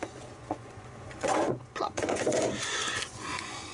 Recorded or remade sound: remade